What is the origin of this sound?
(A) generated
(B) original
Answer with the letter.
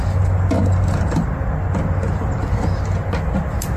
B